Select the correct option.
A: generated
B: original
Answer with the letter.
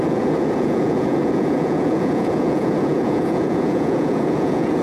A